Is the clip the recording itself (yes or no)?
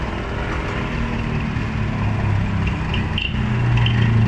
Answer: yes